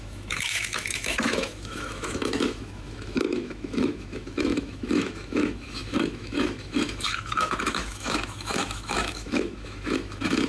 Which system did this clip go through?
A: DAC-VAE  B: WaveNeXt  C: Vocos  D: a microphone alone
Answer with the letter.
A